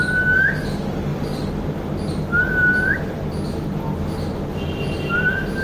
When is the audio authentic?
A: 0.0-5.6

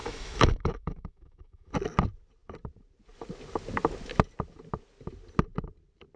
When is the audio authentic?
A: 1.7-6.2

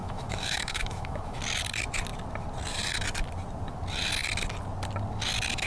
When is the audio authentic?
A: 1.4-5.7

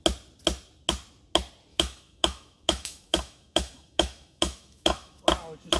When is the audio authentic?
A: 0.0-1.7; 5.2-5.8

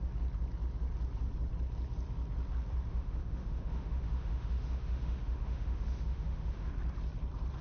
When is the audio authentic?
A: 0.0-2.9; 6.7-7.6

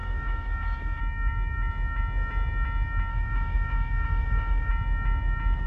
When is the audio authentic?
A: 1.0-3.1; 4.7-5.7

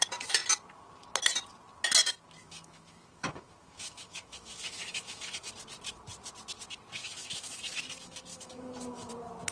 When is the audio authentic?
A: 0.0-2.4; 5.5-7.0; 7.6-8.3; 9.1-9.5

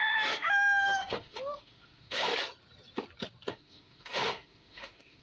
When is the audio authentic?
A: 2.3-3.5